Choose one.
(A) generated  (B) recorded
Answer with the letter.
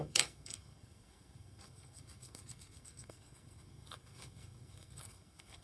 A